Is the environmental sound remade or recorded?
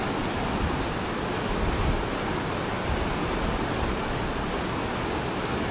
recorded